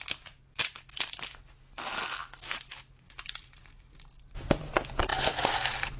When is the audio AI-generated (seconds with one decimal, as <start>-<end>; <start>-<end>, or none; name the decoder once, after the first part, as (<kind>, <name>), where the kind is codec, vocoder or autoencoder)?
none